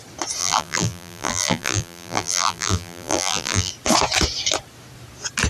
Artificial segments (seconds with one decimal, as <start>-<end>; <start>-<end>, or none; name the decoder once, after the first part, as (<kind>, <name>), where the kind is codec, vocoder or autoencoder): 0.4-3.7 (vocoder, BigVGAN v2)